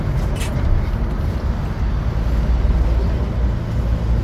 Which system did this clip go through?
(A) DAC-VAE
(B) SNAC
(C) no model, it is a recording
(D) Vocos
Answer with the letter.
C